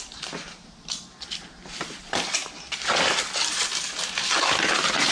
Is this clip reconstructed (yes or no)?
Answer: no